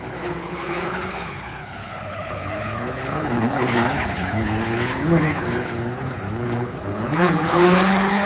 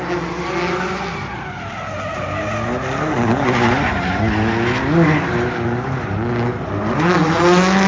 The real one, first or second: second